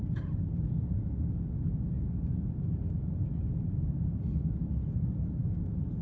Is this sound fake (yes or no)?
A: no